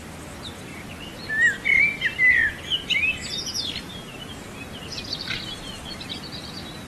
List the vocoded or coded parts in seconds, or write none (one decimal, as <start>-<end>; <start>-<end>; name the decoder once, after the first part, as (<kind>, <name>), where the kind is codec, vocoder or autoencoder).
none